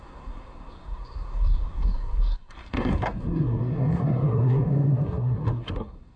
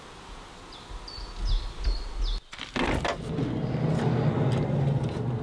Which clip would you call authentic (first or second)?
second